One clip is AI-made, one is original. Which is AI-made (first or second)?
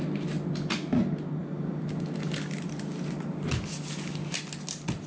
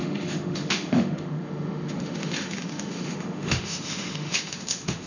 second